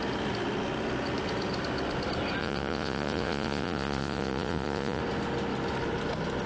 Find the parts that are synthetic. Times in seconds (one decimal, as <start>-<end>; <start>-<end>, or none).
2.4-5.0